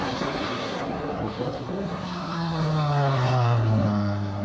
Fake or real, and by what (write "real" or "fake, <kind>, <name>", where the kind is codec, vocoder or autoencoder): fake, codec, SNAC